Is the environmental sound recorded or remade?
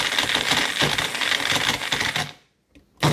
recorded